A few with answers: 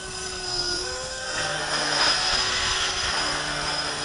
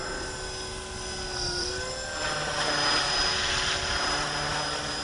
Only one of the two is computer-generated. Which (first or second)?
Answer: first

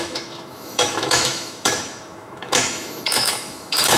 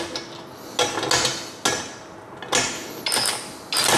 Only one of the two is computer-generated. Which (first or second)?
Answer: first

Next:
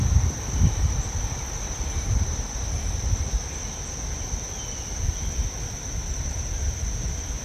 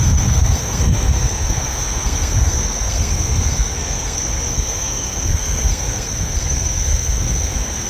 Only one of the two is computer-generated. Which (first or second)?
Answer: second